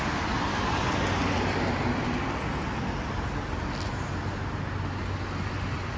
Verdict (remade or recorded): recorded